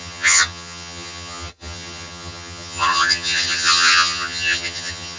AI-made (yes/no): yes